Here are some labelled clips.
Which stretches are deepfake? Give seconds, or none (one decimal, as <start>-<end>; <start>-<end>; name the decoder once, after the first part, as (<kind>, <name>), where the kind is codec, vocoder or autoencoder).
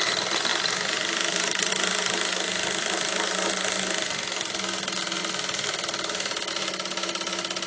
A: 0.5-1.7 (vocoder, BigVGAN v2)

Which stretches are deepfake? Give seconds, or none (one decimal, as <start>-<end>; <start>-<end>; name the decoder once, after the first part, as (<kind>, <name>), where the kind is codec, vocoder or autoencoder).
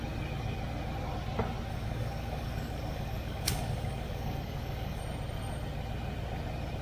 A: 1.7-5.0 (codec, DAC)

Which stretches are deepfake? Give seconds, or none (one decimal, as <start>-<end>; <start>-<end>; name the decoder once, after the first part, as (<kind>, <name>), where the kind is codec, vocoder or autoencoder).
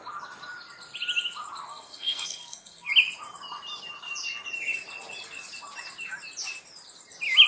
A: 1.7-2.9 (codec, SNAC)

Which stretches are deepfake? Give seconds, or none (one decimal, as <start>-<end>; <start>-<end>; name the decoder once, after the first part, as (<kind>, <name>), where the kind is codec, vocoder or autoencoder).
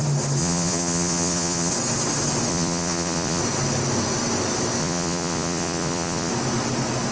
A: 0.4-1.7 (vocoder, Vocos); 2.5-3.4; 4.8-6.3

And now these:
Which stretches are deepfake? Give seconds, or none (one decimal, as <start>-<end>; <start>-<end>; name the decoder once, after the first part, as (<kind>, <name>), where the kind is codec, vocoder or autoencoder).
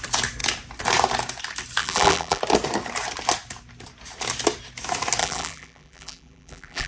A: 1.8-2.4 (vocoder, BigVGAN v2); 5.2-6.9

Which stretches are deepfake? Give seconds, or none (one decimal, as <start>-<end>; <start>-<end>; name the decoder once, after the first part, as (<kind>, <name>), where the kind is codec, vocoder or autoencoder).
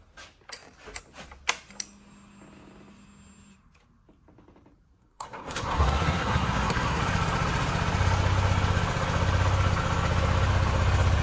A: 5.0-7.0 (codec, SNAC)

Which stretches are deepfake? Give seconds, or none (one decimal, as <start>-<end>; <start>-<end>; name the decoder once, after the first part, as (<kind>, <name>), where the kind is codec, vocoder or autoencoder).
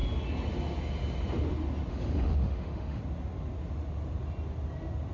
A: 1.9-3.0 (autoencoder, DAC-VAE)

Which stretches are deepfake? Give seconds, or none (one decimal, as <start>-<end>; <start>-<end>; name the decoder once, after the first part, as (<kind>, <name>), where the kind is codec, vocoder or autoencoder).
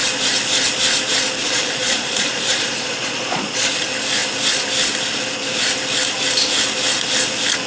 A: 1.4-3.7 (vocoder, Vocos)